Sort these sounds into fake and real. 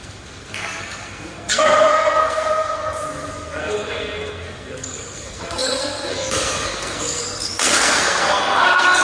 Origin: fake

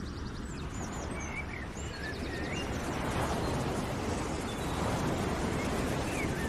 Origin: real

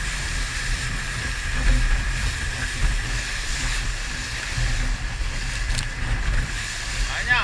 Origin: real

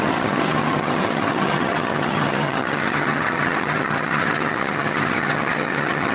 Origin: fake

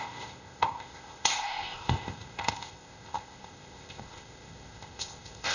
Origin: fake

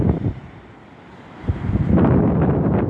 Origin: fake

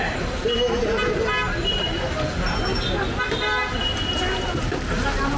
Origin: real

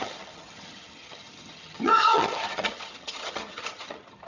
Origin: fake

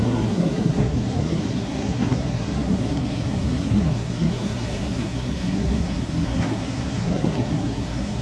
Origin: fake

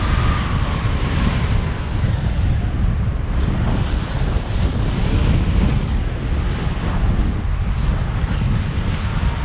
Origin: real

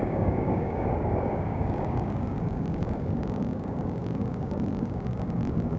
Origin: fake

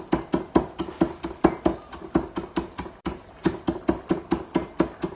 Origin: real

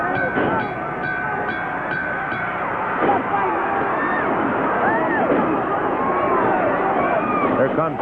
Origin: real